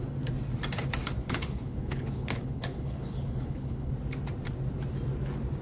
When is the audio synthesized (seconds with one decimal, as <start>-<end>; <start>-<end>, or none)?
1.2-3.9